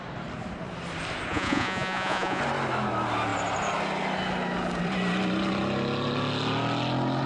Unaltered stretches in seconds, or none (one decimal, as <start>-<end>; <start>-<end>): 0.0-1.3; 2.4-7.3